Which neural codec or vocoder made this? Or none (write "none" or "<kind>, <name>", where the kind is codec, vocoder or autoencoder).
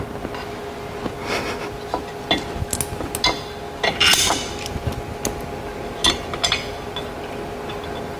none